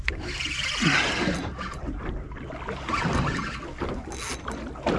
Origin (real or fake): real